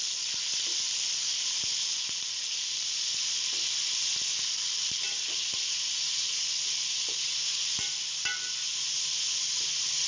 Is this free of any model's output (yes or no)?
yes